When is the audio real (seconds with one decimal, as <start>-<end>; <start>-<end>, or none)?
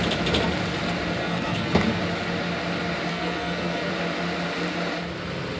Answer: 0.0-1.2; 2.0-3.1; 3.9-5.6